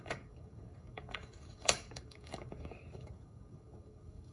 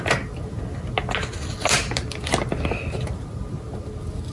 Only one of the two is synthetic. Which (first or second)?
first